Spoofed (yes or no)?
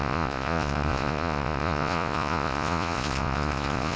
yes